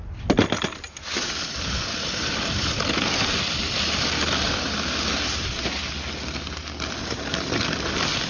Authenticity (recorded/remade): recorded